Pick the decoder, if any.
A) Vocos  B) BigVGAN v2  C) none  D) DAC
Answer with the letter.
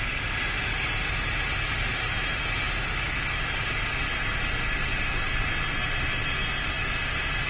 C